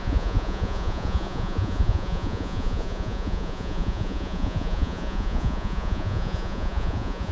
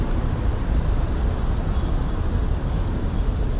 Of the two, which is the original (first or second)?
second